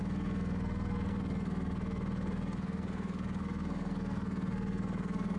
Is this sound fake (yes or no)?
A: yes